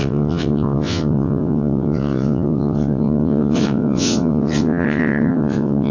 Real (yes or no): no